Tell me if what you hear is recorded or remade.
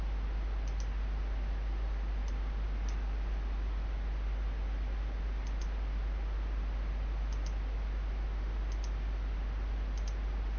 recorded